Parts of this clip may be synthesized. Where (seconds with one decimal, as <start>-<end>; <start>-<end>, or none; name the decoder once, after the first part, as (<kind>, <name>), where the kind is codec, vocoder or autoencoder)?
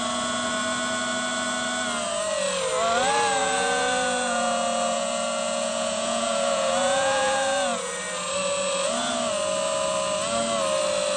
3.4-7.9 (vocoder, Vocos)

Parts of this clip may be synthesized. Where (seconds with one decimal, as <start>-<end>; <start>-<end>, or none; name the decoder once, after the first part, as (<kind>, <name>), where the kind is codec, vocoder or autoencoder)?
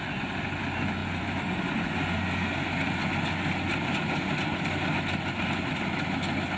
none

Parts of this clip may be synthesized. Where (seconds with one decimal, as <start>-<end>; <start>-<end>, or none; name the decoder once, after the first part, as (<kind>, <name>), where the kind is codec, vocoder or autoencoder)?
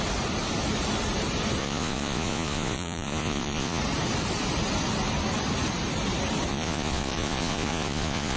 1.6-3.8 (vocoder, Vocos); 6.5-8.4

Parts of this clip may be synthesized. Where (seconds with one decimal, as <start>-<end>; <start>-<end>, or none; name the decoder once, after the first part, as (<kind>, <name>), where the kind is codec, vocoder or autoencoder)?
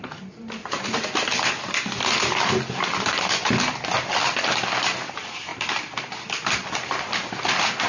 none